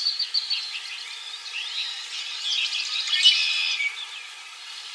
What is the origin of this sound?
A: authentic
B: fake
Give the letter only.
A